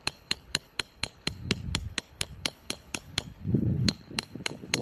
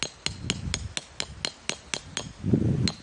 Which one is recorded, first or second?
second